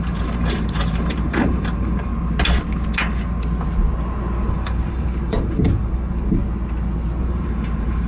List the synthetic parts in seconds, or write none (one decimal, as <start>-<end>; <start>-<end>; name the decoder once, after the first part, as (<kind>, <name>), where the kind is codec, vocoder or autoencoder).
0.0-2.1 (vocoder, BigVGAN v2); 4.5-6.4; 7.2-8.1